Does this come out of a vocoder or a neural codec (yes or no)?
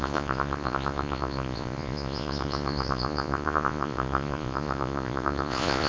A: yes